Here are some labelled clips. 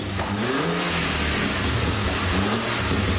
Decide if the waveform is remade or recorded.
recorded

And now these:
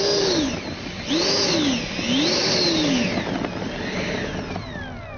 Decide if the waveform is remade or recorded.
recorded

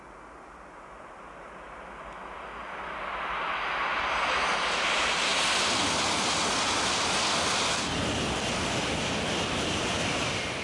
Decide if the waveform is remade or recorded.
recorded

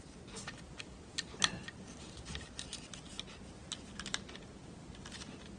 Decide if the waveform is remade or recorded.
recorded